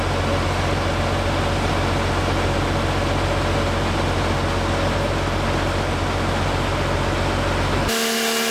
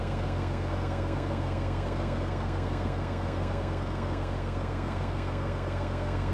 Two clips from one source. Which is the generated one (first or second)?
second